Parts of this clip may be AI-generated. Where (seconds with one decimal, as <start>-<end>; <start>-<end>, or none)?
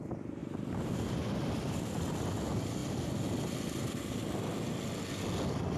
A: none